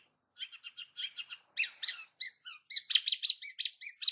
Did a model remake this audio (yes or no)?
no